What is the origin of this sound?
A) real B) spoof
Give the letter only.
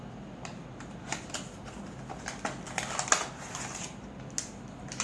A